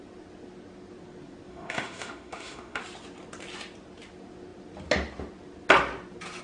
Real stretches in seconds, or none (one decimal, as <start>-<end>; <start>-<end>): 0.0-1.5; 2.8-6.4